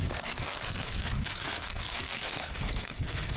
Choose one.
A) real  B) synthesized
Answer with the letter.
B